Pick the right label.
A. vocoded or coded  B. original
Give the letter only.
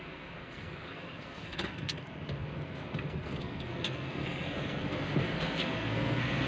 A